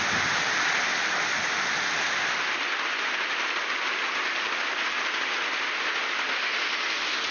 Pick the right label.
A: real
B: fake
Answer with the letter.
A